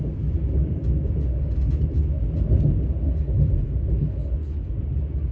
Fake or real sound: real